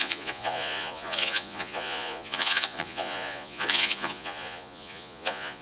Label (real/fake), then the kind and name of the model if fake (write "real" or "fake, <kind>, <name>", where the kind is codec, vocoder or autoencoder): fake, vocoder, Vocos